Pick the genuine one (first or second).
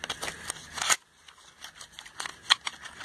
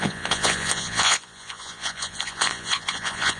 first